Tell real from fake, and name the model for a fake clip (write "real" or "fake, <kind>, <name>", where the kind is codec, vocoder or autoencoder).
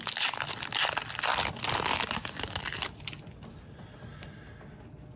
real